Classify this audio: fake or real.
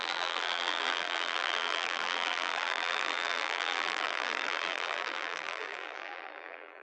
fake